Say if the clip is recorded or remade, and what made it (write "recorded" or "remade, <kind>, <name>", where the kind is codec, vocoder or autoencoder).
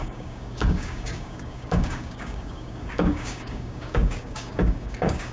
remade, codec, DAC